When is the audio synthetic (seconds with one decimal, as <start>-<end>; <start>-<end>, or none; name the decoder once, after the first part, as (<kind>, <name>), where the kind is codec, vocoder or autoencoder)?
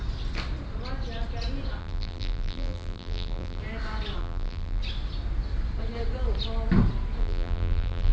1.8-3.6 (vocoder, BigVGAN v2); 4.2-4.8; 7.2-8.1